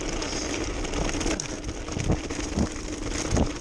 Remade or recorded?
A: recorded